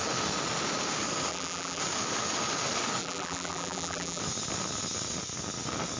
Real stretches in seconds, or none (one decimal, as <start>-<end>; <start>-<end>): 0.0-1.3; 1.8-3.0; 4.2-6.0